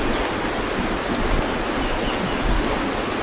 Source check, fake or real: real